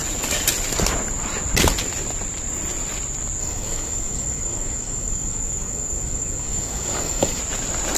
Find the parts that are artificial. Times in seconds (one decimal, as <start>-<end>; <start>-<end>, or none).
3.4-7.4